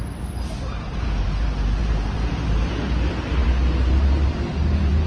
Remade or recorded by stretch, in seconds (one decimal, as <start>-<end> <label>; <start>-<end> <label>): 0.0-1.8 recorded; 1.8-2.6 remade; 2.6-3.4 recorded; 3.4-5.1 remade